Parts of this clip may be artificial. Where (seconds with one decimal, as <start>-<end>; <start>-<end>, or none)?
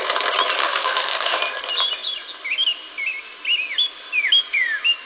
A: 0.6-1.4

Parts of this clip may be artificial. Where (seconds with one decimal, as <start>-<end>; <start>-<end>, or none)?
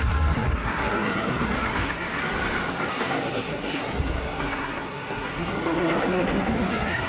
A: 0.0-2.2; 2.9-7.1